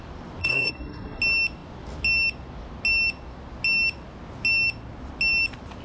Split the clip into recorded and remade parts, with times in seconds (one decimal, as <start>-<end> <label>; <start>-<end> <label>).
0.0-0.4 recorded; 0.4-1.2 remade; 1.2-5.8 recorded